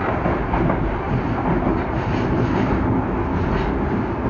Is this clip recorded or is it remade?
recorded